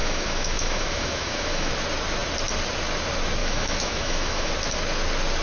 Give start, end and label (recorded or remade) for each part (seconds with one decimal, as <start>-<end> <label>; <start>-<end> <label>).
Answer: 0.0-1.7 remade; 1.7-3.4 recorded; 3.4-4.5 remade; 4.5-5.4 recorded